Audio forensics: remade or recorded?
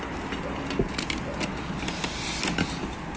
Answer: recorded